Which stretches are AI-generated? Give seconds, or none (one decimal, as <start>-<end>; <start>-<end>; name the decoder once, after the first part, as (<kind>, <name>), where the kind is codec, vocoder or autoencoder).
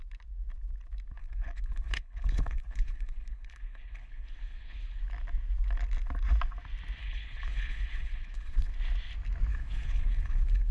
1.2-5.0 (codec, HILCodec); 7.0-8.7; 9.5-10.7